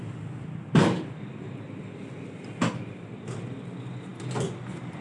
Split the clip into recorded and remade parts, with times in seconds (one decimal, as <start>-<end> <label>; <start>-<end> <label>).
0.0-5.0 recorded